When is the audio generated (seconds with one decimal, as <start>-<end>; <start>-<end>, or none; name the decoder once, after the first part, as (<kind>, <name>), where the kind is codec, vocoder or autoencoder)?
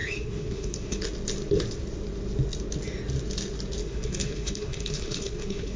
0.0-1.0 (codec, HILCodec); 3.8-5.8